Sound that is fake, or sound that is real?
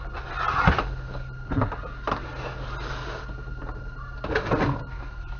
real